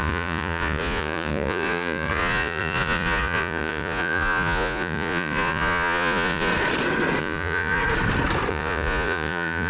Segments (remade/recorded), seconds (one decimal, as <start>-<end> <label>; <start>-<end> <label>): 0.0-6.5 remade; 6.5-7.2 recorded; 7.2-7.8 remade; 7.8-8.5 recorded; 8.5-9.7 remade